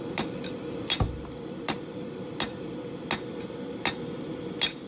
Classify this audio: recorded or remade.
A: recorded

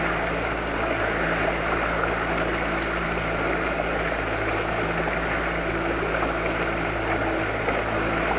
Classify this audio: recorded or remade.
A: recorded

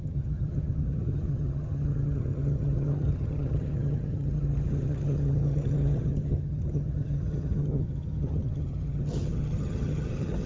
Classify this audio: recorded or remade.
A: remade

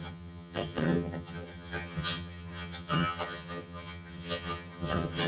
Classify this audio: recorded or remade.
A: remade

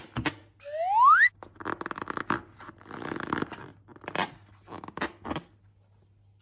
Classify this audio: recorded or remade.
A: recorded